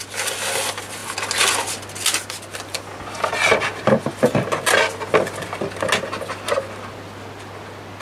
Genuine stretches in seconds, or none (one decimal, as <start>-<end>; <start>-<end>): 0.0-8.0